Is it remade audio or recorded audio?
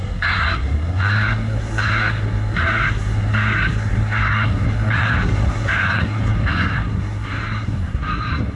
remade